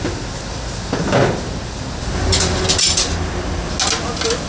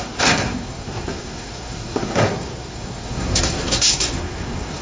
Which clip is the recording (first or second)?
first